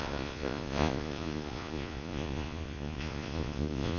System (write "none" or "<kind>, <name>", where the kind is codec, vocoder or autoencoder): vocoder, Vocos